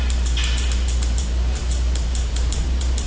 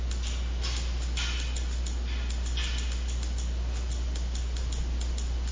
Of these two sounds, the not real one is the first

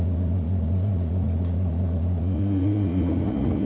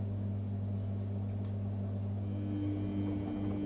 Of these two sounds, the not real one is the first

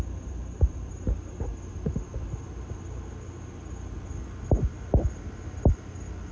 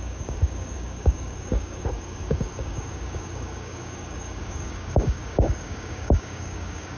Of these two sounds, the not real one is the second